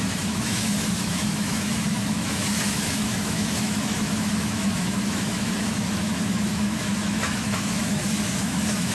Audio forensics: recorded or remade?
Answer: remade